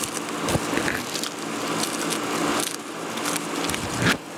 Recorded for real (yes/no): yes